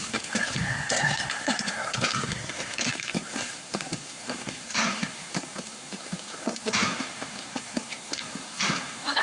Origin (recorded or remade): remade